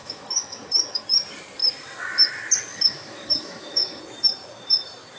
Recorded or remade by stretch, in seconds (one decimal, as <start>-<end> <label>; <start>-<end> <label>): 0.0-1.0 remade; 1.0-2.7 recorded; 2.7-4.0 remade; 4.0-5.2 recorded